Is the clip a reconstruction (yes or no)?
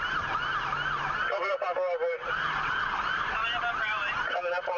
no